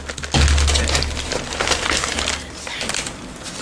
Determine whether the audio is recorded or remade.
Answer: recorded